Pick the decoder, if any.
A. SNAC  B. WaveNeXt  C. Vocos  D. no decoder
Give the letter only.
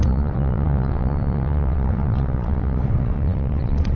B